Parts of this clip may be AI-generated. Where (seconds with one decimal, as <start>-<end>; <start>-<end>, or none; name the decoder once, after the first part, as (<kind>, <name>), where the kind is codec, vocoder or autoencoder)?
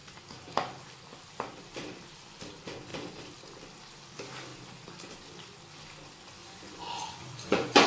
6.4-7.9 (vocoder, Vocos)